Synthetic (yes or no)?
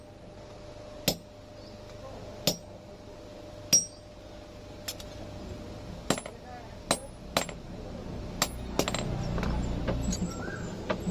no